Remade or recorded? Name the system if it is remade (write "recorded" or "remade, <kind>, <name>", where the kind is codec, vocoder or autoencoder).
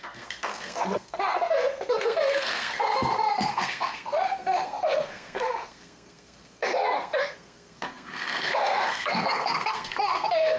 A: remade, codec, SNAC